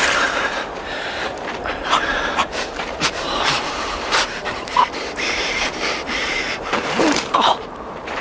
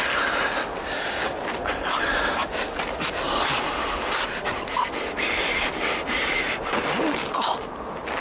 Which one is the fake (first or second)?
first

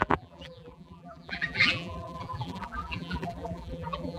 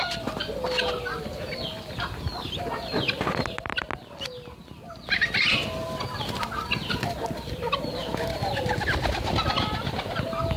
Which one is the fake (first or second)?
first